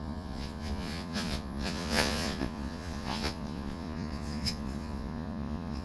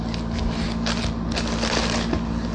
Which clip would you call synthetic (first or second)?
first